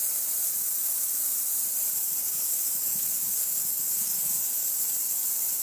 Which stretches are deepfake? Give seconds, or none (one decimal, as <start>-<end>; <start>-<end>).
2.2-4.7